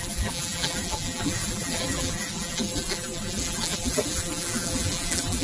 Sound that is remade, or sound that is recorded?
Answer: remade